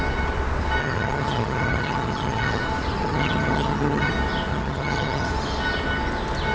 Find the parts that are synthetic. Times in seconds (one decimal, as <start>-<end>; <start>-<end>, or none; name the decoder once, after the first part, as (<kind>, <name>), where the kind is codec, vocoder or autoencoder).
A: 0.8-2.6 (vocoder, HiFi-GAN); 3.0-4.1; 4.5-5.3